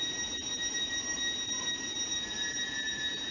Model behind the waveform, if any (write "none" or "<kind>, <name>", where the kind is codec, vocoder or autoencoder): none